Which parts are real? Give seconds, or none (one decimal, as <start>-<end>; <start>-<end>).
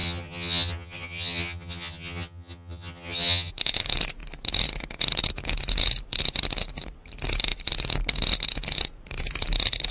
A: 3.5-9.9